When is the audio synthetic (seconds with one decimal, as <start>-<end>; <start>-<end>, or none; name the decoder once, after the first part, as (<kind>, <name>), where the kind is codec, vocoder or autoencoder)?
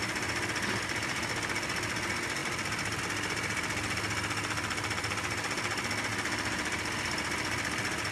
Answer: none